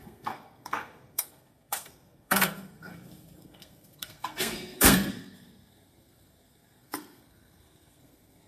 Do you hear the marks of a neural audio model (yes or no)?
yes